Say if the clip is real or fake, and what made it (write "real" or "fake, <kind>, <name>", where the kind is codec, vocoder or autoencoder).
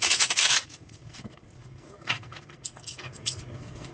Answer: fake, codec, SNAC